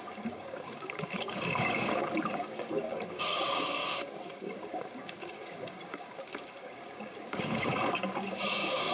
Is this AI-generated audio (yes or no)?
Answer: yes